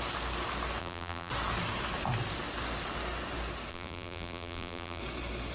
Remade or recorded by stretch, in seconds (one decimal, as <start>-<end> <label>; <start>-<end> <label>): 0.0-0.8 recorded; 0.8-1.3 remade; 1.3-3.7 recorded; 3.7-5.0 remade; 5.0-5.5 recorded